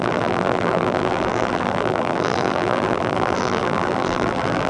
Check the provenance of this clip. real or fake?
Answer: fake